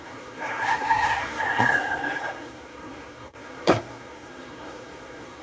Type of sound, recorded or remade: remade